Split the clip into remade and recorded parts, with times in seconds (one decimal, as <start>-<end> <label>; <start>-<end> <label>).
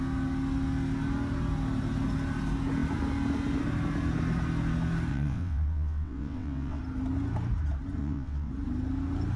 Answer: 0.0-5.1 recorded; 5.1-6.8 remade; 6.8-8.0 recorded; 8.0-8.5 remade; 8.5-9.4 recorded